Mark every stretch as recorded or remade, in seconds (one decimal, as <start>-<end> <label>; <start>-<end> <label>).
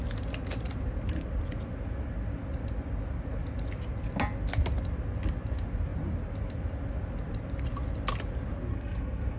0.0-8.7 recorded; 8.7-9.4 remade